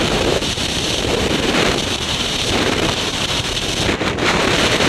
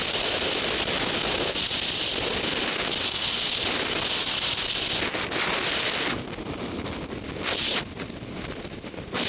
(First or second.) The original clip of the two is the second